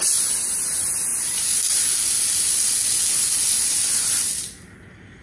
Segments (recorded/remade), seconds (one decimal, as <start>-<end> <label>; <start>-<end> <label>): 0.0-5.2 recorded